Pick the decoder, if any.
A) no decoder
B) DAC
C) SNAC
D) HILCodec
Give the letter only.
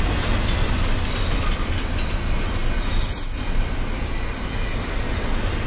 A